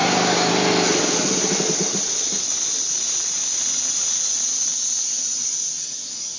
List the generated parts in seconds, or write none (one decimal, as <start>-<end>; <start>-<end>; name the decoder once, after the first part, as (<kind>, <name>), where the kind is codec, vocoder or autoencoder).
0.0-0.5 (codec, DAC)